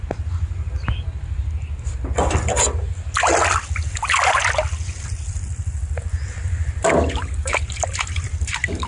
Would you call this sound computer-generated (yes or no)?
no